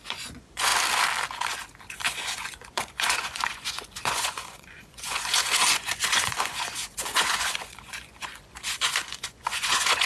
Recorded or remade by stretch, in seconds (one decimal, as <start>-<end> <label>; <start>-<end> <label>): 0.0-0.7 remade; 0.7-1.9 recorded; 1.9-10.1 remade